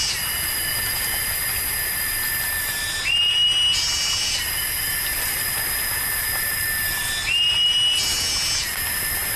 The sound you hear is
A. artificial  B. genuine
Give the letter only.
B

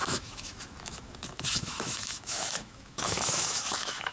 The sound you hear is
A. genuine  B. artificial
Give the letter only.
B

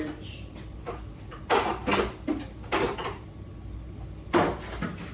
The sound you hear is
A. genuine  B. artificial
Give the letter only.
A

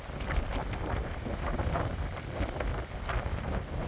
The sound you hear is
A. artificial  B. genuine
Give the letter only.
B